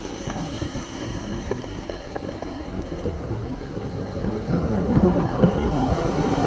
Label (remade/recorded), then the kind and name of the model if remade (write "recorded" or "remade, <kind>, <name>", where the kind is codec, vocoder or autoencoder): remade, codec, SNAC